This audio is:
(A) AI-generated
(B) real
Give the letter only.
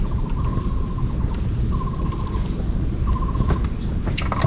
B